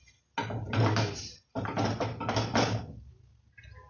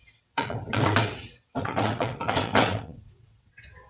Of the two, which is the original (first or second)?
first